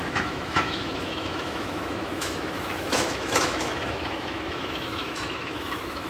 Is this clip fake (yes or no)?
yes